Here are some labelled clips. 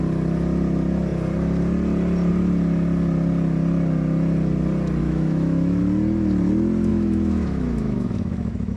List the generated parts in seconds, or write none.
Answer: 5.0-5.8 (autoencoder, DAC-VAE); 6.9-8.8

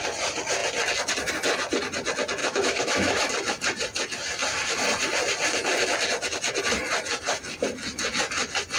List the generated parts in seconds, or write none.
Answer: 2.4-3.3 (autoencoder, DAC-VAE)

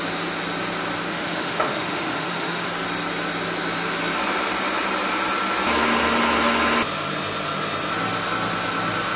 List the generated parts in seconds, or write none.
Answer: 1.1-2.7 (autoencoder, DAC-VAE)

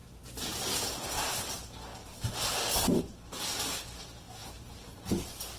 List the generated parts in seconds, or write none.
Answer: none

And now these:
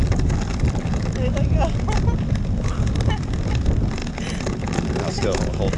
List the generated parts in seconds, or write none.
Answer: none

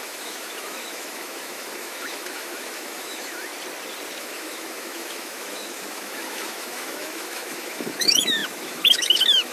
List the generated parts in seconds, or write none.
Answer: 0.0-3.5 (autoencoder, DAC-VAE); 4.2-9.5

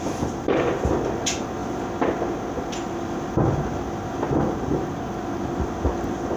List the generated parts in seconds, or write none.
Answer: none